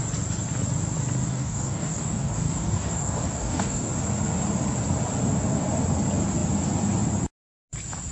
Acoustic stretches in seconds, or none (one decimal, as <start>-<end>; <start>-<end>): 0.0-1.3; 3.9-8.1